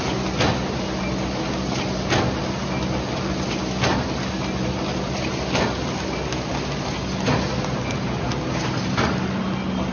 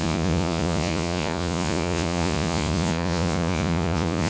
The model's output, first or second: second